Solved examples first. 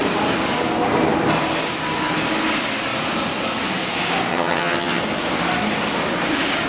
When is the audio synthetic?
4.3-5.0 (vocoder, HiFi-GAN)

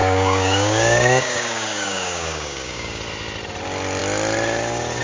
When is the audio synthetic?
0.0-3.0 (codec, DAC)

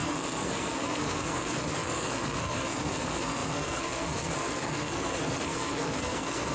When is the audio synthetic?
0.0-6.5 (codec, SNAC)

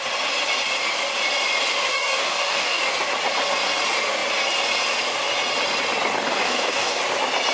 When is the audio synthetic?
1.9-2.8 (codec, DAC); 6.3-7.0

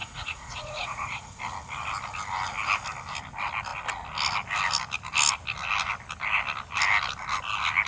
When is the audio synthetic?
0.0-1.4 (vocoder, Vocos)

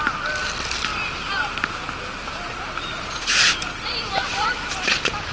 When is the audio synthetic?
none

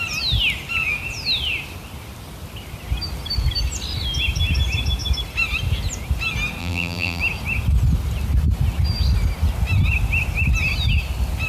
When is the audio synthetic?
6.6-7.2 (vocoder, BigVGAN v2)

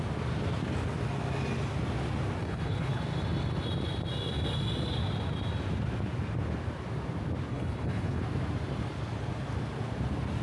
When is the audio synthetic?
2.4-3.0 (codec, HILCodec); 7.5-8.2